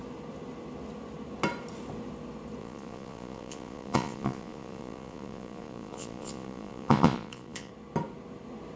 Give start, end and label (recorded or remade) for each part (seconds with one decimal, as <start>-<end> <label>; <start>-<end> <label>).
0.0-2.6 recorded; 2.6-7.7 remade; 7.7-8.8 recorded